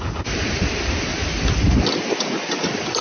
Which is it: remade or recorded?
recorded